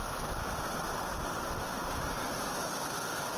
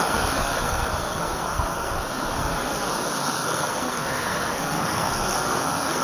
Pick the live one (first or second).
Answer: first